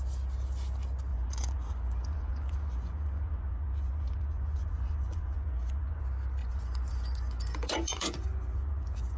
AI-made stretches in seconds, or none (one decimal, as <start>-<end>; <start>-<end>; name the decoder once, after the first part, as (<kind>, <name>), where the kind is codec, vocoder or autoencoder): 1.1-6.0 (vocoder, Vocos); 6.4-9.2

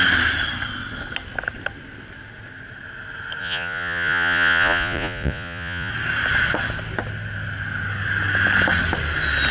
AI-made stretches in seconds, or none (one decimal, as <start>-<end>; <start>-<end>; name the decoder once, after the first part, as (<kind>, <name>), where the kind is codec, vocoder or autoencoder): 3.4-5.9 (vocoder, Vocos)

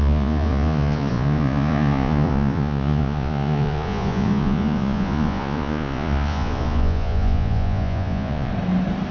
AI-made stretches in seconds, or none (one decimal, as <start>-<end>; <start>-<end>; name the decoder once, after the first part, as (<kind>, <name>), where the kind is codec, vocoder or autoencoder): 0.0-8.5 (vocoder, Vocos)

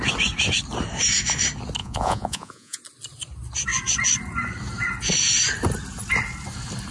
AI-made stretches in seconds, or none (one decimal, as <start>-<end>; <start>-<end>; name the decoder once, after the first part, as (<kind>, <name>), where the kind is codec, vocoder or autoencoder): 1.8-2.8 (vocoder, Vocos)

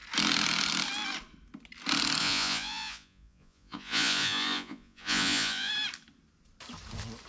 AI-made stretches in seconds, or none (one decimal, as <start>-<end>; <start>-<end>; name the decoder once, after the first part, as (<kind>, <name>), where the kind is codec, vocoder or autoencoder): 2.2-5.7 (vocoder, Vocos)

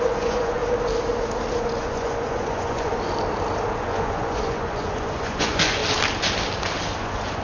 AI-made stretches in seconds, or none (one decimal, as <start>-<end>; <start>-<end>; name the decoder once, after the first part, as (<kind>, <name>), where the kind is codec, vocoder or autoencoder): 0.0-0.6 (vocoder, Vocos); 1.6-2.9; 3.8-5.8; 7.0-7.4